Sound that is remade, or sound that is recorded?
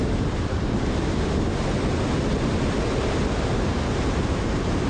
recorded